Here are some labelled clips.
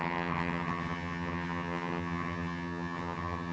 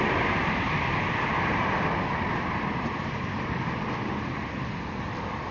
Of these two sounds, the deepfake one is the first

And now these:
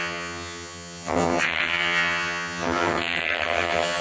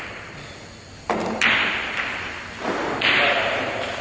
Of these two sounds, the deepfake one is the first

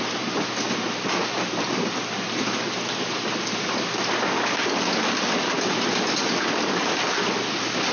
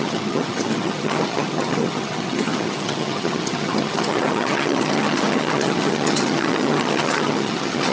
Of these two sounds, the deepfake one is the second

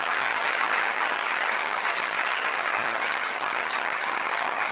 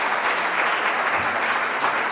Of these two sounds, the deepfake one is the first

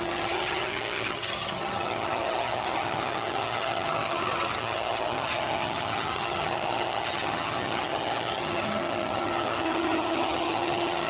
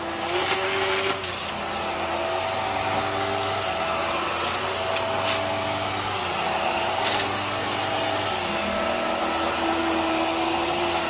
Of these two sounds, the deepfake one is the first